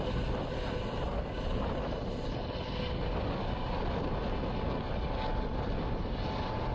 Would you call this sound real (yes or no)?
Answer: yes